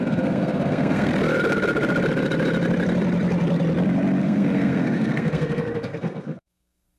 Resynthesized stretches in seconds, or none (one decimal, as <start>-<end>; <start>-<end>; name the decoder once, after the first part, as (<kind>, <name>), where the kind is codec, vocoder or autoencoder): 0.0-1.1 (codec, SNAC); 4.2-7.0